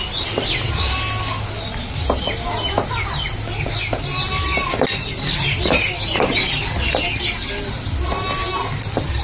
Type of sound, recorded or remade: recorded